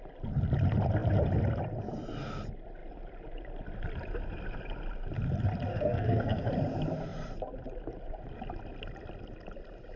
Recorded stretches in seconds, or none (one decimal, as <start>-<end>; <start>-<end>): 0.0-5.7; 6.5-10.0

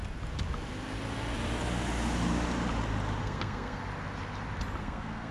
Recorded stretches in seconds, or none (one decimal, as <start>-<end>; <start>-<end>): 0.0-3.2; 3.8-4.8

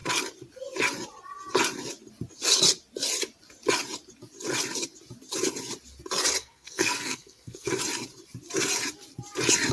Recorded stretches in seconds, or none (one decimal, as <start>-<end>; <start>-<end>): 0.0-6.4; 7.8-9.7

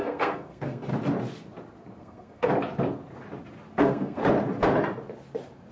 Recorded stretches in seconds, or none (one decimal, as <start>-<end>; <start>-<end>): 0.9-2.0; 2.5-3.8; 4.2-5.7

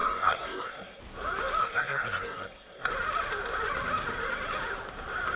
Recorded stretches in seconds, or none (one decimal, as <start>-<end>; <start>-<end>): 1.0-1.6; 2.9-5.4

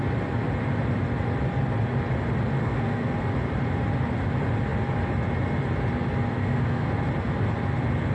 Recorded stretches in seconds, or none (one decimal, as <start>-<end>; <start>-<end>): 0.0-2.6; 3.3-6.4; 6.9-8.1

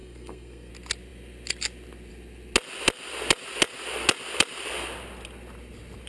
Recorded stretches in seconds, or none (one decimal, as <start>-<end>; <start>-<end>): 0.7-6.1